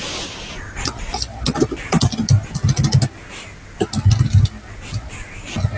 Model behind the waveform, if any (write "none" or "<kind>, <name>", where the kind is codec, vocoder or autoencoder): none